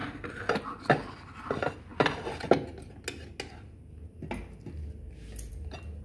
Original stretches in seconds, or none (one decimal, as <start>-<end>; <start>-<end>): 0.0-6.0